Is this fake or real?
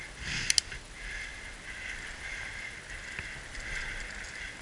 real